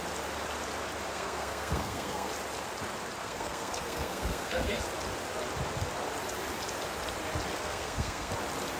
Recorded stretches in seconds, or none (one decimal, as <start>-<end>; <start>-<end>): 0.0-1.1; 2.3-3.2; 4.8-7.5; 8.3-8.8

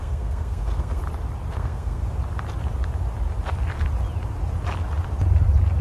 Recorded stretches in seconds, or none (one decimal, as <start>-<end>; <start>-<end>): 1.0-1.5; 2.0-5.8

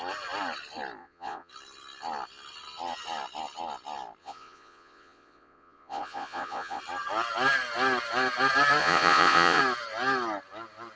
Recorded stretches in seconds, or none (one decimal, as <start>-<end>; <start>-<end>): 0.0-1.0; 1.5-4.2; 6.8-8.8; 9.6-11.0